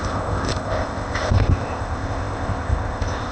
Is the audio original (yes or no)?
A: no